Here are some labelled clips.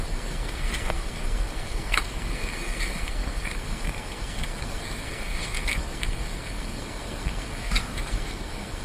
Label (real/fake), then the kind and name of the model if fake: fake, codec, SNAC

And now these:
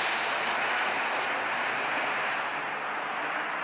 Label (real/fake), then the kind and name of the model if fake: real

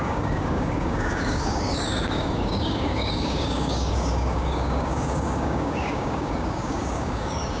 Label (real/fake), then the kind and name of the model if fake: fake, codec, DAC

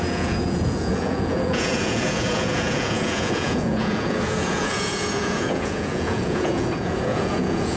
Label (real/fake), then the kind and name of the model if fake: fake, vocoder, Vocos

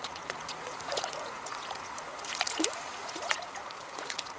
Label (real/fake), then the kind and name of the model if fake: fake, vocoder, Vocos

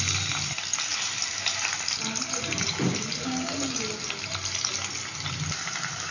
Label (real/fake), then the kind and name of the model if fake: real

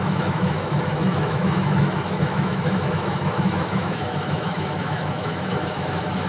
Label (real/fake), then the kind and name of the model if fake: fake, autoencoder, DAC-VAE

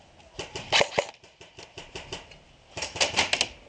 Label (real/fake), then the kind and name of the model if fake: real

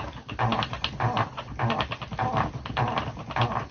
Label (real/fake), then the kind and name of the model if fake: real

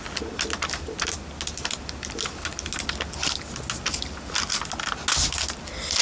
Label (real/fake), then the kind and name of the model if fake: real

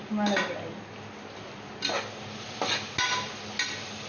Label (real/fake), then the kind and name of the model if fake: real